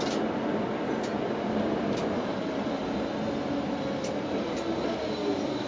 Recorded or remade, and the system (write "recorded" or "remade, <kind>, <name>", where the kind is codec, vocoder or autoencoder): recorded